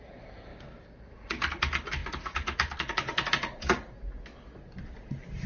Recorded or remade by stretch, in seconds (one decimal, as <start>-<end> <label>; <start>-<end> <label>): 0.0-0.5 recorded; 0.5-1.0 remade; 1.0-5.5 recorded